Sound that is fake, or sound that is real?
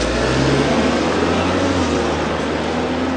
real